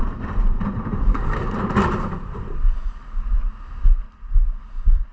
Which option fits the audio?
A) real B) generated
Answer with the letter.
B